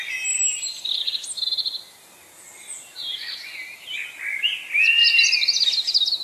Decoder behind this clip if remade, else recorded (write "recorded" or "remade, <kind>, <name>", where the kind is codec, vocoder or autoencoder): recorded